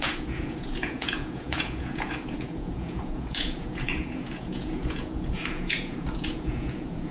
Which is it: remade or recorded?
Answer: remade